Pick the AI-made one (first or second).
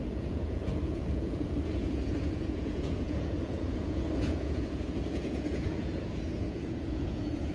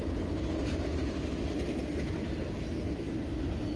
first